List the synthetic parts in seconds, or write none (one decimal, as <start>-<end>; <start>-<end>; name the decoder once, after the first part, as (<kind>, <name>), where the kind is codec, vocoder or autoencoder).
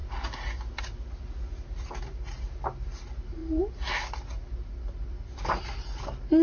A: none